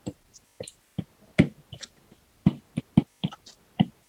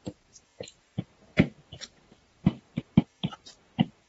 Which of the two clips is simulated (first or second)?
second